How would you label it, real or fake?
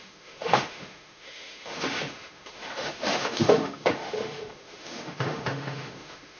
fake